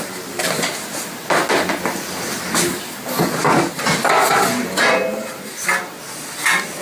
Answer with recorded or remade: recorded